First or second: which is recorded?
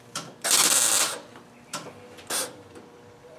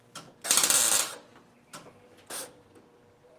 second